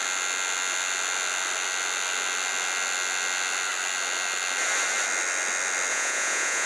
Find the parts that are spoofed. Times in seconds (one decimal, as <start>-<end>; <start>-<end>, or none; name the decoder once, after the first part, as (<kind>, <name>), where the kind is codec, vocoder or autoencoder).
5.9-6.7 (vocoder, Vocos)